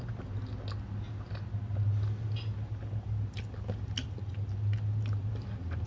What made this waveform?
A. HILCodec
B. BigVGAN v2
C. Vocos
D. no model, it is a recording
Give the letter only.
D